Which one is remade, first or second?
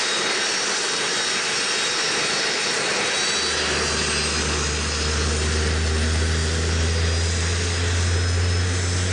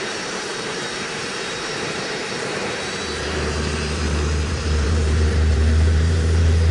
second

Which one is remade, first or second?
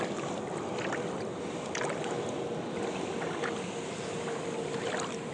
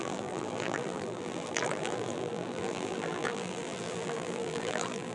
second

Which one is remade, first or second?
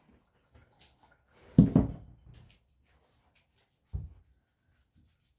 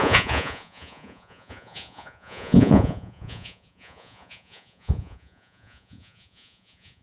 second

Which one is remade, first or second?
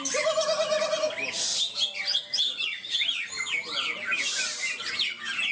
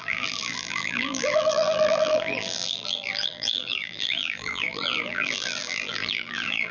second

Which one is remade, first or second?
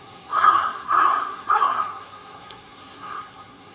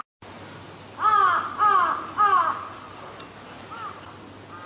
first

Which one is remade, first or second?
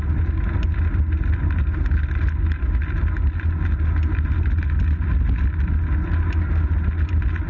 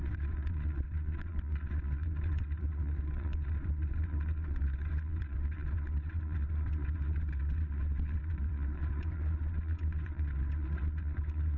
second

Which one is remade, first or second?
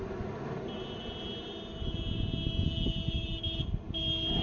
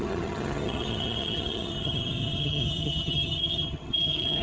second